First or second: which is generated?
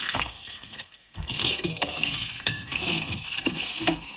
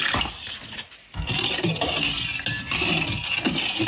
first